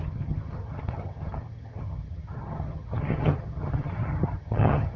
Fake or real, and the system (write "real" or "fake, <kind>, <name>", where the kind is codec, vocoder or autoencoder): fake, vocoder, HiFi-GAN